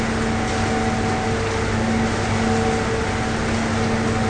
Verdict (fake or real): real